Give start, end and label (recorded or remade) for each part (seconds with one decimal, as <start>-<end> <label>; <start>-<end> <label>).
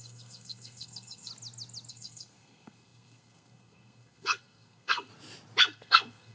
0.0-1.3 remade; 1.3-1.9 recorded; 1.9-5.1 remade; 5.1-5.6 recorded; 5.6-6.3 remade